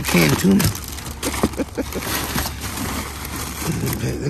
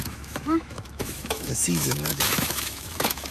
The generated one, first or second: second